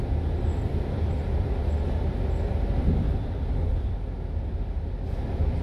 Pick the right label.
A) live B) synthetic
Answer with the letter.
A